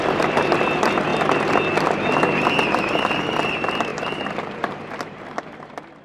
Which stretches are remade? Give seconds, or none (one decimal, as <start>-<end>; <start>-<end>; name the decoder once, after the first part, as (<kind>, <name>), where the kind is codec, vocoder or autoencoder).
3.9-4.8 (vocoder, BigVGAN v2)